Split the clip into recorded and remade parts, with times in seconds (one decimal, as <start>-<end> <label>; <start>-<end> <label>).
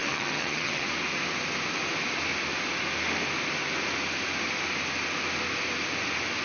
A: 0.0-0.9 remade; 0.9-6.4 recorded